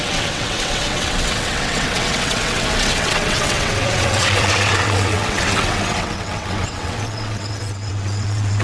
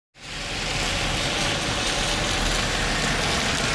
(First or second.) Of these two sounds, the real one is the second